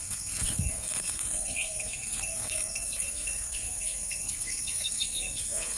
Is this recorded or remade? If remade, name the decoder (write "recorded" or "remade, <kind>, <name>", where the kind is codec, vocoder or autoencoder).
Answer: remade, codec, SNAC